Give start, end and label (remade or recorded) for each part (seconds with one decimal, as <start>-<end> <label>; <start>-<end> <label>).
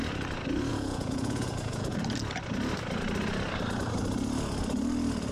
0.0-0.7 recorded; 0.7-2.0 remade; 2.0-5.3 recorded